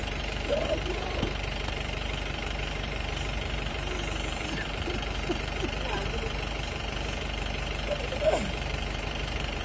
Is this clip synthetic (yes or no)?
yes